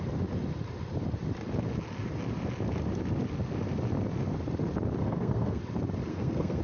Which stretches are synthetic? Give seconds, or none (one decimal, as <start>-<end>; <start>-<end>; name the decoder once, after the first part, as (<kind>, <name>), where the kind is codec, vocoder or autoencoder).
5.0-5.6 (codec, SNAC); 6.1-6.6

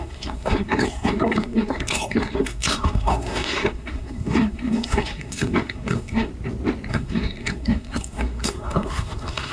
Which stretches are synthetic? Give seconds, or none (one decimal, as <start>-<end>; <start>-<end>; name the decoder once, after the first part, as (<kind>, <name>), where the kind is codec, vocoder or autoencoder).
0.0-6.3 (codec, SNAC); 6.9-9.5

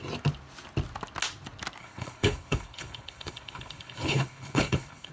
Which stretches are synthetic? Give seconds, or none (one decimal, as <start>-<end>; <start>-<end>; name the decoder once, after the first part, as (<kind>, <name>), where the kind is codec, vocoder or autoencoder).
1.8-5.1 (codec, HILCodec)

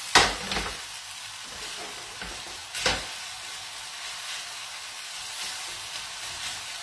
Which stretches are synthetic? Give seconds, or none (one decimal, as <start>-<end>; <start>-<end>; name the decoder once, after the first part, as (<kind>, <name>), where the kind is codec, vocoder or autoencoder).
none

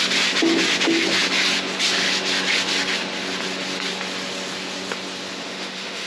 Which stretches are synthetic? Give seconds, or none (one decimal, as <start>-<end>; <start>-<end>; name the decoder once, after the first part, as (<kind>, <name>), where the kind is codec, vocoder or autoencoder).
5.4-6.1 (autoencoder, DAC-VAE)

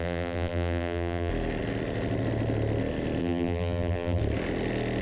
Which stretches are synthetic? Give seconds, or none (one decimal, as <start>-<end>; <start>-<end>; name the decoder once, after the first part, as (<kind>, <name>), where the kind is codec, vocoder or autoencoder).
0.0-1.3 (vocoder, BigVGAN v2); 3.2-4.2